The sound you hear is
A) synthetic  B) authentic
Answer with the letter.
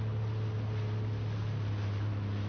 B